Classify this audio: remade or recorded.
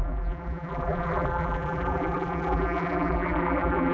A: remade